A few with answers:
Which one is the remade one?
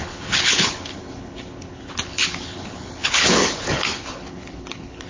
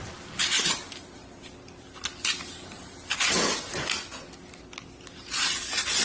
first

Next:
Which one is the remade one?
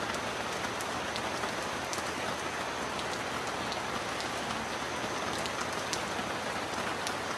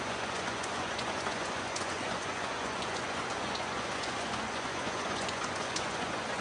second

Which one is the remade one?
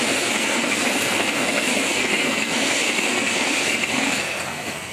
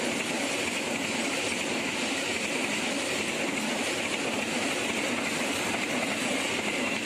first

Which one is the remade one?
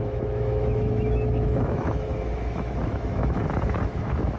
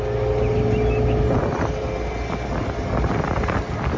first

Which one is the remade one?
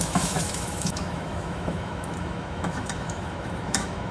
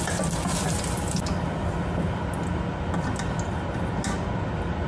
first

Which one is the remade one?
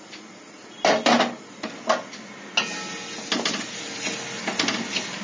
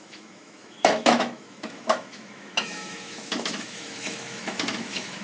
second